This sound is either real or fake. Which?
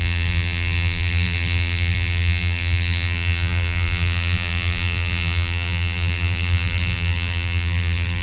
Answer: fake